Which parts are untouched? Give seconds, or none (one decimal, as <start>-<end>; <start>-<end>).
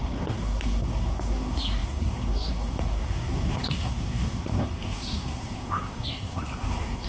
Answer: none